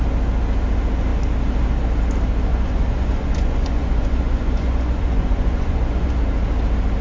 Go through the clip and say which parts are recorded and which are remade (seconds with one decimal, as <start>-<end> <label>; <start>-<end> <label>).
0.0-2.5 recorded; 2.5-6.2 remade; 6.2-7.0 recorded